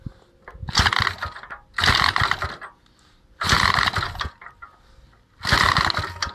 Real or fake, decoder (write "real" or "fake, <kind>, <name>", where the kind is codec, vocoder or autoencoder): real